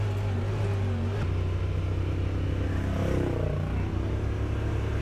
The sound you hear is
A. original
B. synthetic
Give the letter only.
A